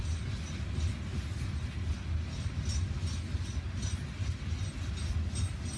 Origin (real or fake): real